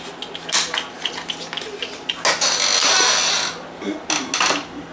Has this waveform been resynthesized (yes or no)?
no